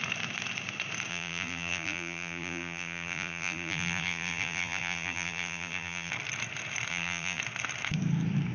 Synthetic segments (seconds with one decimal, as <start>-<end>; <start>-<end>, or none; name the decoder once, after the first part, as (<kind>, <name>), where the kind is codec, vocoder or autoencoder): 1.1-6.1 (vocoder, BigVGAN v2); 6.9-7.4